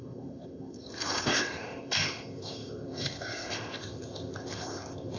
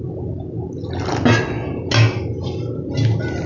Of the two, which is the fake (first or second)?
first